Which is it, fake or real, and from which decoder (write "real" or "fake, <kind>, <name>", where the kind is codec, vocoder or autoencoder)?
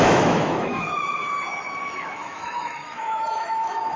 fake, autoencoder, DAC-VAE